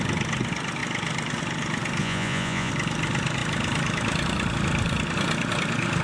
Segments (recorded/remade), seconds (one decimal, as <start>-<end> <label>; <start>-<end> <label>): 0.0-2.0 recorded; 2.0-2.7 remade; 2.7-6.0 recorded